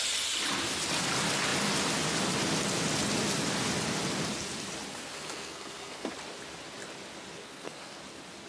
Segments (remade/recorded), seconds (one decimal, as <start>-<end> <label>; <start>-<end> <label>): 0.0-4.9 recorded; 4.9-6.1 remade; 6.1-7.4 recorded; 7.4-8.0 remade; 8.0-8.5 recorded

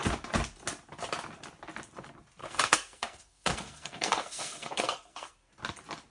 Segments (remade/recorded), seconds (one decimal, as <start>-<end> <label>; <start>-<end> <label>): 0.0-2.4 recorded; 2.4-5.5 remade; 5.5-6.1 recorded

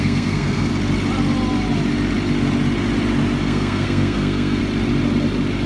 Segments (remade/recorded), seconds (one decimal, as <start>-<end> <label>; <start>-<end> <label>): 0.0-0.7 remade; 0.7-3.4 recorded; 3.4-4.6 remade; 4.6-5.7 recorded

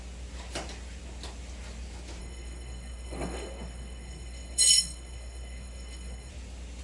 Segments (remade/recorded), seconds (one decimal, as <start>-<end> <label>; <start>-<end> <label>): 0.0-2.2 recorded; 2.2-6.3 remade; 6.3-6.8 recorded